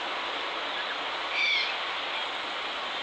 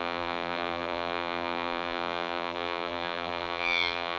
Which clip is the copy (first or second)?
second